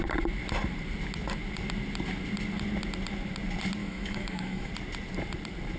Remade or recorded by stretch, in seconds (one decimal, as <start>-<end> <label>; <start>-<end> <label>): 0.0-3.8 recorded; 3.8-4.7 remade; 4.7-5.8 recorded